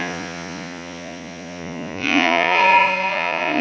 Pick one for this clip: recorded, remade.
remade